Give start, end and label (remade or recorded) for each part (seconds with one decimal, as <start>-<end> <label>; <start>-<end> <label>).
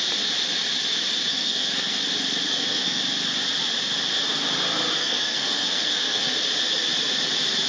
0.0-1.3 recorded; 1.3-2.0 remade; 2.0-2.4 recorded; 2.4-3.0 remade; 3.0-5.0 recorded; 5.0-6.4 remade; 6.4-7.7 recorded